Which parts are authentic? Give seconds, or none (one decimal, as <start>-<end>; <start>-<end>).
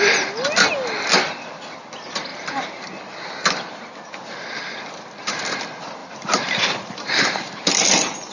0.0-2.3; 3.0-6.0; 7.7-8.3